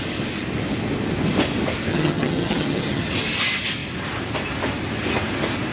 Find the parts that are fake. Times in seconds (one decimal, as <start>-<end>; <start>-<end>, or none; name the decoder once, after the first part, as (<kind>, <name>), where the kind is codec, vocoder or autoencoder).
1.9-3.1 (vocoder, HiFi-GAN)

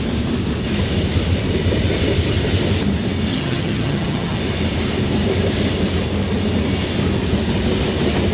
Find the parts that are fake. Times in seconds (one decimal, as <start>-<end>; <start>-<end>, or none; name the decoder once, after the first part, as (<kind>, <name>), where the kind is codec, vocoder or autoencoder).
3.3-4.4 (vocoder, HiFi-GAN)

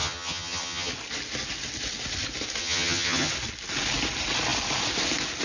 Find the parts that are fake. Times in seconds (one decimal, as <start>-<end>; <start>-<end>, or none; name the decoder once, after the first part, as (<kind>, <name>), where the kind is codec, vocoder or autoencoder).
0.0-0.9 (vocoder, HiFi-GAN); 2.6-3.3

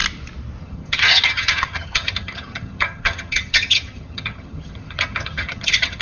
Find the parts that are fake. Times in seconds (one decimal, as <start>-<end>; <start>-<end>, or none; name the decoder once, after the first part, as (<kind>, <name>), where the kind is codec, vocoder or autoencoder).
0.6-6.0 (vocoder, HiFi-GAN)

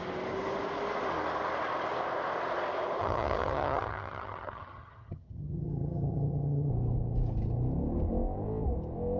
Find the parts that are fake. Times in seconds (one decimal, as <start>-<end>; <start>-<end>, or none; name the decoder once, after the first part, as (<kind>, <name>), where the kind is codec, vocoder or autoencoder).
3.0-6.7 (vocoder, HiFi-GAN)

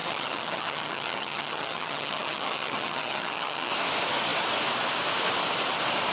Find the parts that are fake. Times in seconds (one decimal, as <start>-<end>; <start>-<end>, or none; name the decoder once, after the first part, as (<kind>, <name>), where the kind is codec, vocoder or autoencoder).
0.0-3.7 (vocoder, HiFi-GAN)